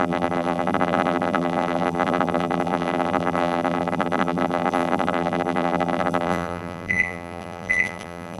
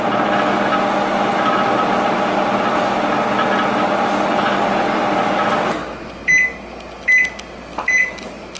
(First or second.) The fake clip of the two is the first